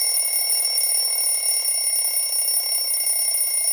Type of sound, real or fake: real